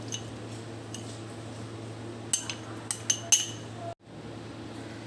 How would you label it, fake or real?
real